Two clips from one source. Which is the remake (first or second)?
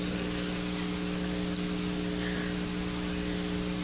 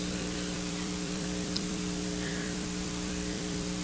second